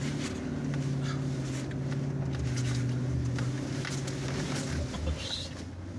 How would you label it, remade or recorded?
recorded